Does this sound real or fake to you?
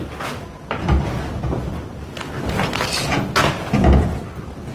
real